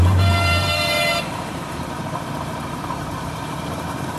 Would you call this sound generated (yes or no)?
yes